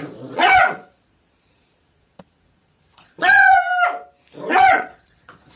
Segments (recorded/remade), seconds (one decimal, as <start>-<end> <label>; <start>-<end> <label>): 0.0-3.7 remade; 3.7-4.5 recorded; 4.5-5.6 remade